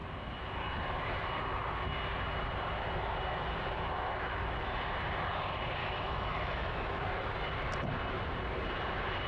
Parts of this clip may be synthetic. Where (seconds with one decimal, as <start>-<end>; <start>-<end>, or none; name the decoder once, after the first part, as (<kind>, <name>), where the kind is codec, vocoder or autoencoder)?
5.8-7.0 (autoencoder, DAC-VAE)